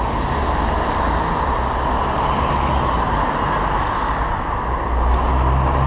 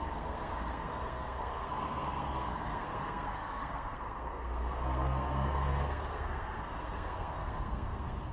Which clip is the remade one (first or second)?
second